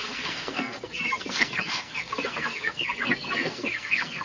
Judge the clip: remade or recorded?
remade